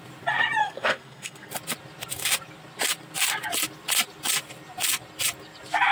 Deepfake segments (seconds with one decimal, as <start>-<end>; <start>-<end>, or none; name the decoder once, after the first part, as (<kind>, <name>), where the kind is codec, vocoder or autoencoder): 0.6-1.5 (codec, SNAC)